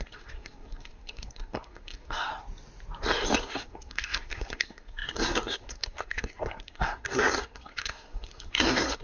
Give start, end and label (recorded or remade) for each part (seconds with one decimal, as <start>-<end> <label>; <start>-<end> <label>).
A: 0.0-2.3 remade; 2.3-3.4 recorded; 3.4-9.0 remade